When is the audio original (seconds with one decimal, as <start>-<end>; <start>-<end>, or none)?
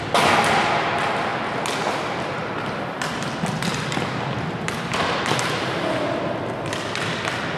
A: 0.0-7.6